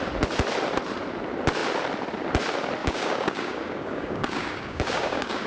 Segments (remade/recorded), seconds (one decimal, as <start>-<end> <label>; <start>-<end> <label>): 0.0-2.8 recorded; 2.8-5.5 remade